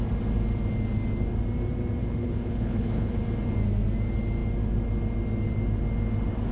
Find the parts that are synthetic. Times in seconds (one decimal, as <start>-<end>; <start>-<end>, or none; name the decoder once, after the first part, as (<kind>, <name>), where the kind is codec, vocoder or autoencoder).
2.0-3.2 (codec, HILCodec)